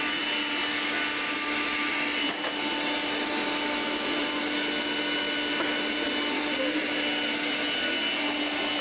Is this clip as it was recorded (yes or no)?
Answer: yes